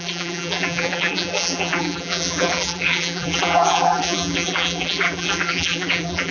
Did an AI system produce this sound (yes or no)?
yes